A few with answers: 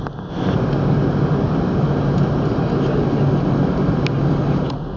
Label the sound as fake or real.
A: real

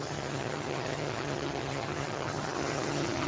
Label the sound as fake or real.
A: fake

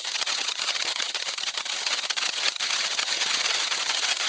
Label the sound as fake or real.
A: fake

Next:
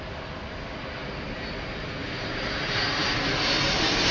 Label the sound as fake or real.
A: real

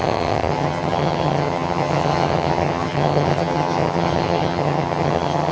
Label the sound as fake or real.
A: fake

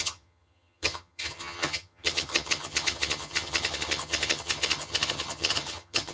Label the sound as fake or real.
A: fake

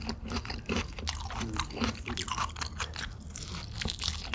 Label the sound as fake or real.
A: real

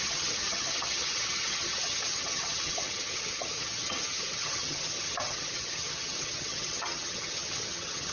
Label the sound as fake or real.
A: fake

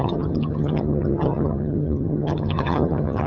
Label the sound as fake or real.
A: fake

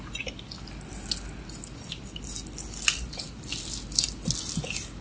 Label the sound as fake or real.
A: real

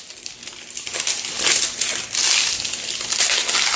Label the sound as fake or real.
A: real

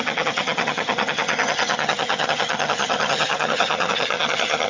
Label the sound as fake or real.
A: fake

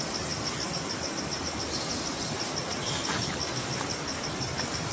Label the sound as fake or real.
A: real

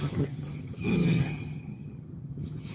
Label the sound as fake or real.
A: fake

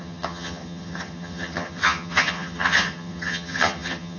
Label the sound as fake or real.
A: fake